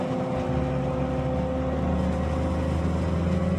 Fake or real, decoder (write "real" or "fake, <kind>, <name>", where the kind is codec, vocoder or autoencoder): real